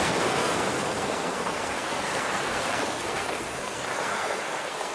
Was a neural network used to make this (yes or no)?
yes